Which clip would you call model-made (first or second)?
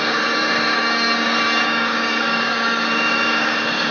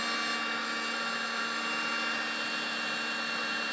first